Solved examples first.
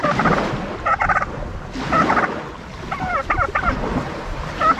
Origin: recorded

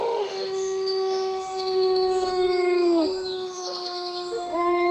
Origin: remade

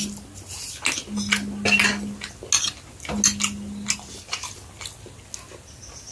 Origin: recorded